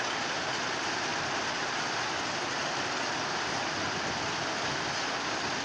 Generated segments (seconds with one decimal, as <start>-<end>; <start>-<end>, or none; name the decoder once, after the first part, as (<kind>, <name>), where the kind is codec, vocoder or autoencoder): none